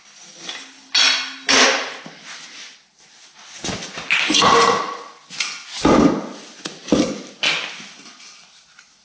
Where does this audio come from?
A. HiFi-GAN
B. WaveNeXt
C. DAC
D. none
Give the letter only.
D